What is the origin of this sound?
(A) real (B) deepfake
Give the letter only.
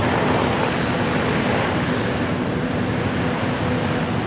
A